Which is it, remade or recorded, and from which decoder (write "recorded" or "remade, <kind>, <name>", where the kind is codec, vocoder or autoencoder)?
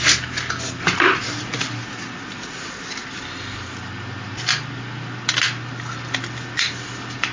recorded